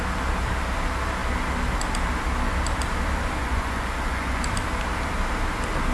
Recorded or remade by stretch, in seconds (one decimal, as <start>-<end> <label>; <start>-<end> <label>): 0.0-3.4 recorded; 3.4-4.4 remade; 4.4-5.9 recorded